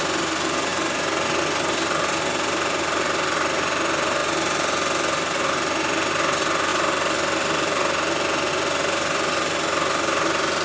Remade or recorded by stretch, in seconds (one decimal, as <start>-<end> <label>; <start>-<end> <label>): 0.0-6.7 recorded; 6.7-8.5 remade; 8.5-10.6 recorded